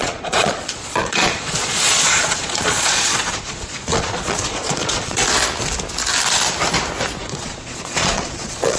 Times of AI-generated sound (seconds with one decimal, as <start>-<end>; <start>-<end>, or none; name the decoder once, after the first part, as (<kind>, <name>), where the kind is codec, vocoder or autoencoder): 0.0-5.2 (vocoder, Vocos); 7.2-8.8